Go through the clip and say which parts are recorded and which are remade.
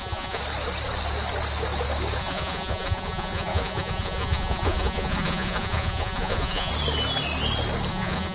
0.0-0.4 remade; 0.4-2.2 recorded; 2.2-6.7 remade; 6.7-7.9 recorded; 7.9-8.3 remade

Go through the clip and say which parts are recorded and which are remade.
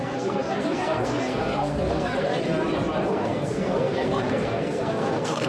0.0-2.3 remade; 2.3-3.1 recorded; 3.1-5.5 remade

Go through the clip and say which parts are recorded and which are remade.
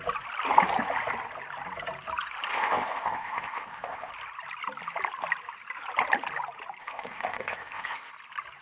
0.0-2.5 recorded; 2.5-4.1 remade; 4.1-6.8 recorded; 6.8-8.1 remade; 8.1-8.6 recorded